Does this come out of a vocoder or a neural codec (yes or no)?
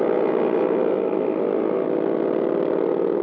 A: no